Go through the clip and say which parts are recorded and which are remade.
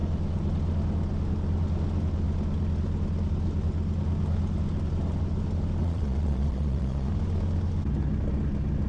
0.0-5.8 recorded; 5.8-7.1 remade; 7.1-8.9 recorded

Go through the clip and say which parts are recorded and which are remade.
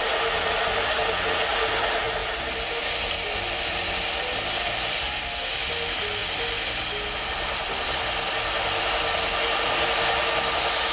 0.0-10.9 recorded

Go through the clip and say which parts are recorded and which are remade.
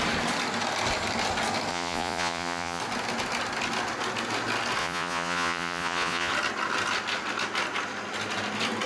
0.0-1.7 recorded; 1.7-2.8 remade; 2.8-4.8 recorded; 4.8-6.3 remade; 6.3-8.9 recorded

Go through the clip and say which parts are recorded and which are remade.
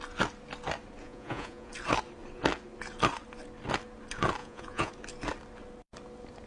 0.0-1.0 recorded; 1.0-1.7 remade; 1.7-4.4 recorded; 4.4-4.9 remade; 4.9-6.5 recorded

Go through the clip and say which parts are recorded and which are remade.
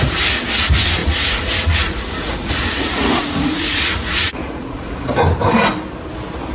0.0-1.0 recorded; 1.0-4.9 remade; 4.9-6.5 recorded